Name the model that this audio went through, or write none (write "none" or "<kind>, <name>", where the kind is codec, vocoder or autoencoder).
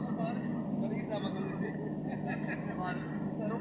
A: none